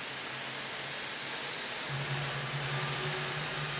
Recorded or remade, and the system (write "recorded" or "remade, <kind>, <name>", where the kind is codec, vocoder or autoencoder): recorded